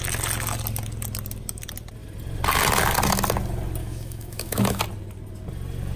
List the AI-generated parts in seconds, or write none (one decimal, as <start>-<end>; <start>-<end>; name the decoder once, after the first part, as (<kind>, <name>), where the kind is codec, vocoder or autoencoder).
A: 3.8-4.8 (autoencoder, DAC-VAE)